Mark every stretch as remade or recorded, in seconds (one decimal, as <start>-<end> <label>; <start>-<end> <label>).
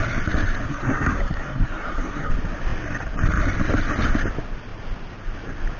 0.0-0.7 recorded; 0.7-2.3 remade; 2.3-5.8 recorded